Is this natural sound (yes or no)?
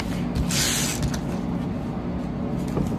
yes